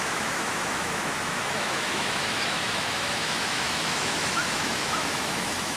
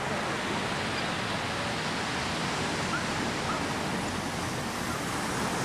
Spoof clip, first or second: first